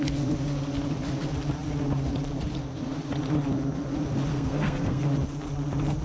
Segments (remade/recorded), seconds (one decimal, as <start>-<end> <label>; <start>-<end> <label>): 0.0-4.3 recorded; 4.3-5.0 remade; 5.0-6.0 recorded